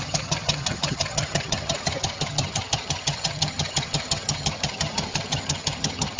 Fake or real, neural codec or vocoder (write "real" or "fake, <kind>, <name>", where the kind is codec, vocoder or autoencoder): fake, vocoder, HiFi-GAN